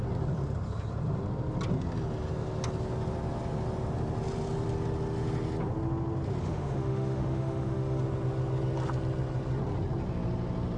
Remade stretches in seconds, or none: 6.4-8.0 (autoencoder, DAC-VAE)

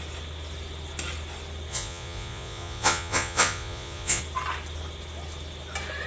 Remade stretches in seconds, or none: 1.7-4.2 (vocoder, Vocos)